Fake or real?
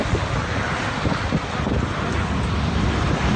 real